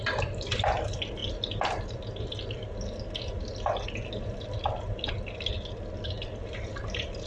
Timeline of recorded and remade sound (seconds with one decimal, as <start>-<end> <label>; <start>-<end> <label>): 0.0-7.3 recorded